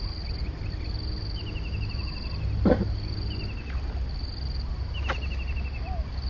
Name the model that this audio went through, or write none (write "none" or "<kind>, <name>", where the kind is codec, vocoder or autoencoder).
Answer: none